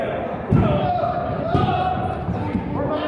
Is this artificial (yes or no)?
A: no